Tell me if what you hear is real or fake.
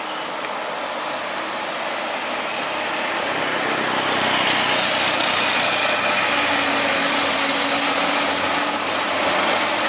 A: real